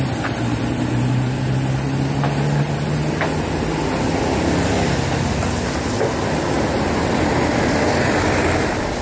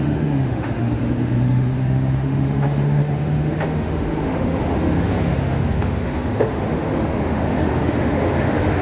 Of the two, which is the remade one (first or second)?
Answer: second